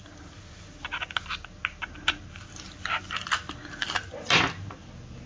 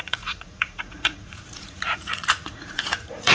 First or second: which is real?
first